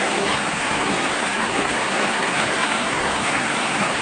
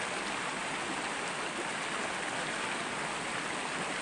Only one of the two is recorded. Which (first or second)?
second